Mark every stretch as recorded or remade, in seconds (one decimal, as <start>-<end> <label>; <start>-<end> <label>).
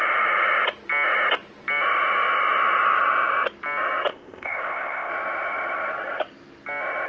0.0-4.1 recorded; 4.1-5.1 remade; 5.1-7.1 recorded